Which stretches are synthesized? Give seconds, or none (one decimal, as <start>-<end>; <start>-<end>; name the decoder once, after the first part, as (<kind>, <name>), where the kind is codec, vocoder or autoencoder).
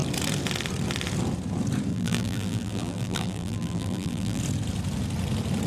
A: 1.9-4.4 (vocoder, BigVGAN v2)